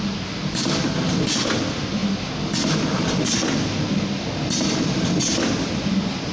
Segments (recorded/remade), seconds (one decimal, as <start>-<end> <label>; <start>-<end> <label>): 0.0-6.3 recorded